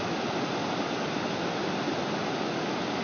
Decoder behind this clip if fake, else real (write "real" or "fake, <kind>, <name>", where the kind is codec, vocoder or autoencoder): real